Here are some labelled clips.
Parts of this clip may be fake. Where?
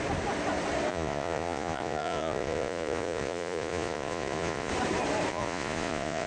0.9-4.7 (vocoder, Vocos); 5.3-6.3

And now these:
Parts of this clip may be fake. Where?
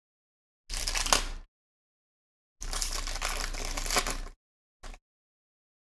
none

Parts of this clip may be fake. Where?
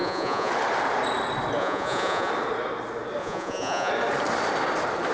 0.0-0.5 (vocoder, Vocos); 1.6-2.3; 3.2-3.9